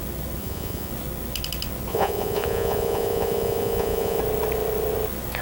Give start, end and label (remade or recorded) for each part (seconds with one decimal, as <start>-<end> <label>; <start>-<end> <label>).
0.0-0.4 recorded; 0.4-0.9 remade; 0.9-1.9 recorded; 1.9-4.2 remade; 4.2-5.4 recorded